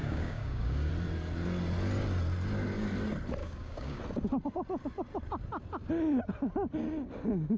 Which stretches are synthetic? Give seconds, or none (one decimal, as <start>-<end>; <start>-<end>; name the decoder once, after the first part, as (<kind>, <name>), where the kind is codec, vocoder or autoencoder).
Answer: 0.0-0.9 (codec, DAC); 3.4-4.0